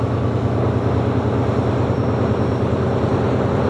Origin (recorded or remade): recorded